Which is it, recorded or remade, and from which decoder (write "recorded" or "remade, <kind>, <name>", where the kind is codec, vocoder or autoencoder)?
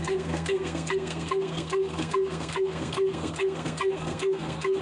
remade, codec, SNAC